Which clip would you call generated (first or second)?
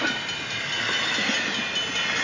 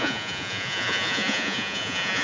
second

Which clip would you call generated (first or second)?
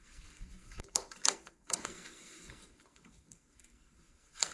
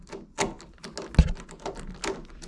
first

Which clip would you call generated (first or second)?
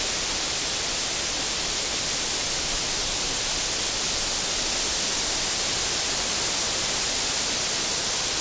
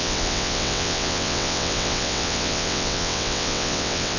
second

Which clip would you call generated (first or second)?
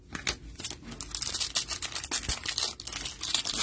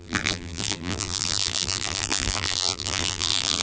second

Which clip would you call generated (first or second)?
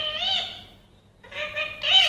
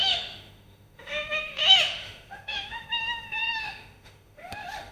second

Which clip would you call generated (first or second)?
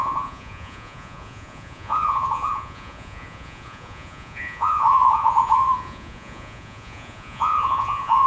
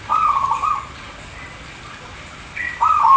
first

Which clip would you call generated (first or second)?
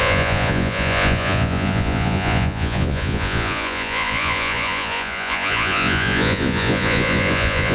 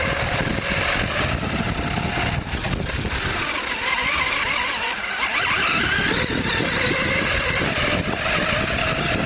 first